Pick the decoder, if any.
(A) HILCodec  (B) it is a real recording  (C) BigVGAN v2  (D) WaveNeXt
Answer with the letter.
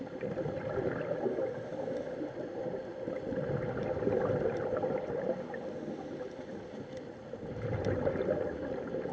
B